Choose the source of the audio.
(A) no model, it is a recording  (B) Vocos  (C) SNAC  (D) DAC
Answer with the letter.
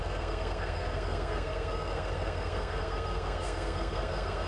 C